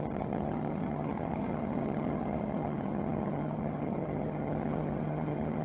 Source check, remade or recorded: remade